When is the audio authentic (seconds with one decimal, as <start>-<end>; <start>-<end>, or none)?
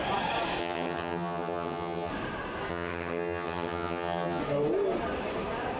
0.0-0.6; 2.1-2.7; 4.4-5.8